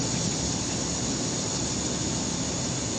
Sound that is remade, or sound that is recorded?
recorded